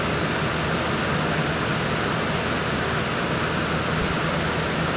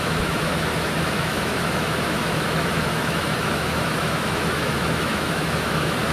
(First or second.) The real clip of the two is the first